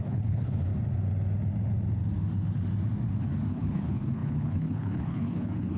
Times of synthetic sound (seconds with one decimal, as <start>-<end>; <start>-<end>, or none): 0.0-0.7; 3.5-5.8